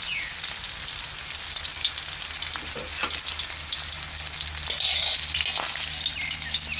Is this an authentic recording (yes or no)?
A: yes